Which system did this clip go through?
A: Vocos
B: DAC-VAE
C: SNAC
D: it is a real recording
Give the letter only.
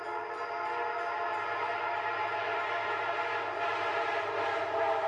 D